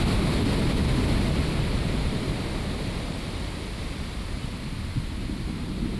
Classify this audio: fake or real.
real